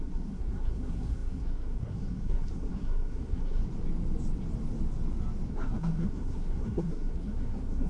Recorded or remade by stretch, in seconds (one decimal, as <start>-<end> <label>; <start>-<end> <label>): 0.0-3.6 remade; 3.6-5.5 recorded; 5.5-7.9 remade